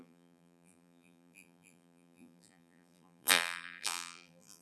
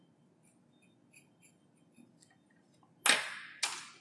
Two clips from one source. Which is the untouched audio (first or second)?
second